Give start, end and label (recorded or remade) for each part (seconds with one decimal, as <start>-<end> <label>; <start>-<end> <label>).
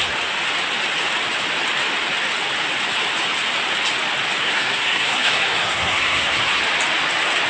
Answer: 0.0-4.4 recorded; 4.4-6.6 remade; 6.6-7.5 recorded